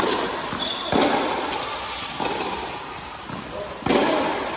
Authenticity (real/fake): real